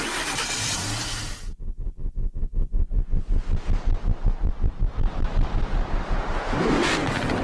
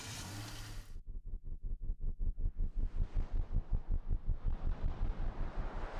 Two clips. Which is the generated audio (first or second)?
first